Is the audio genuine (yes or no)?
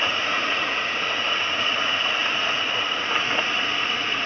no